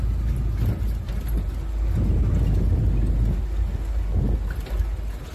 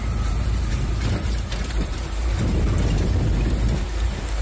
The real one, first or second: first